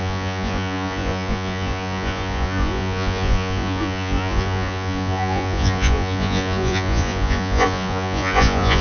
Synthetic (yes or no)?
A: yes